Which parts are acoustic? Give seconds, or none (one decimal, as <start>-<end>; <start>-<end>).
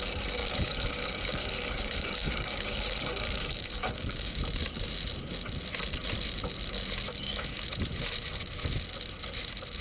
0.0-0.4; 4.4-7.1; 7.6-9.8